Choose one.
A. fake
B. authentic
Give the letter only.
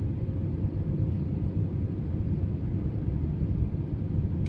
B